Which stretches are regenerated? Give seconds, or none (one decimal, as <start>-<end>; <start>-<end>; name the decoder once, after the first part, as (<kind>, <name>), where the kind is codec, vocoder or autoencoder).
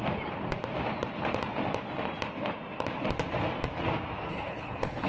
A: 4.3-5.1 (codec, HILCodec)